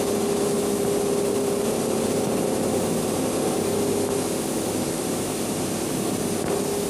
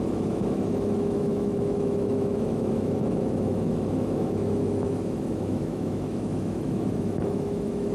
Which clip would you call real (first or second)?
first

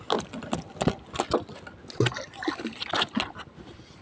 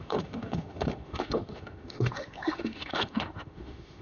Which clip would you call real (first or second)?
first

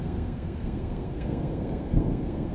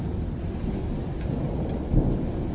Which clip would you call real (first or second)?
second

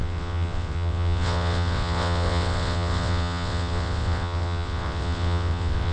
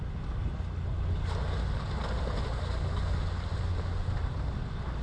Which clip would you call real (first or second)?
second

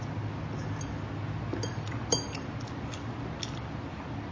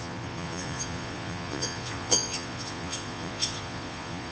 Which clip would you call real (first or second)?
first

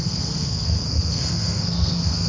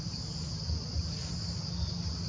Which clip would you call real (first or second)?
second